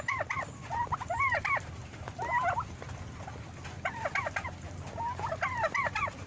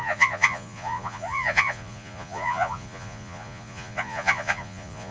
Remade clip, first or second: second